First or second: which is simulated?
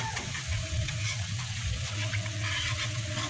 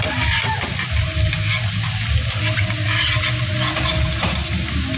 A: first